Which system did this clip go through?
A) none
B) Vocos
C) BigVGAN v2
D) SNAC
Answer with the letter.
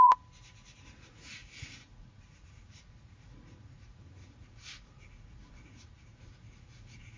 B